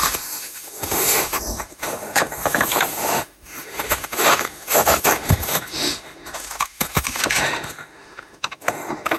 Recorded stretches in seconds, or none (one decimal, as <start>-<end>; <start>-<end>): none